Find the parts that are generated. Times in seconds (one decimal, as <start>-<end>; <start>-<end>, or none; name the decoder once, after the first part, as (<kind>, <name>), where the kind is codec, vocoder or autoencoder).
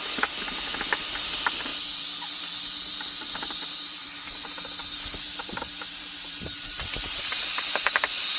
0.0-8.4 (vocoder, BigVGAN v2)